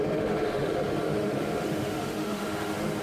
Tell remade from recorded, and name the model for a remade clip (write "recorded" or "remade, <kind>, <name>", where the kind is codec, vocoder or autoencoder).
remade, autoencoder, DAC-VAE